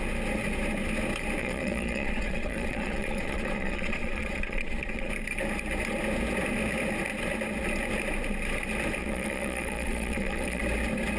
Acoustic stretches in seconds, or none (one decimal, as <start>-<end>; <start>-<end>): 0.0-1.4; 5.1-9.0; 10.6-11.2